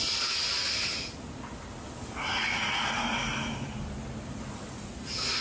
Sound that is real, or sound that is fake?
real